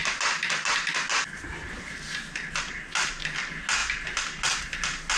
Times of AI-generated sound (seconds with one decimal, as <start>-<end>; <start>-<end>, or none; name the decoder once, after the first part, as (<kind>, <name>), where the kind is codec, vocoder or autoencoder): none